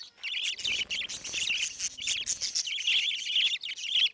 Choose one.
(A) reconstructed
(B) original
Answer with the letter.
B